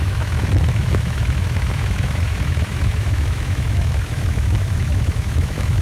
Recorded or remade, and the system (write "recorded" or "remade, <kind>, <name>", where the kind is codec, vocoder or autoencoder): remade, autoencoder, DAC-VAE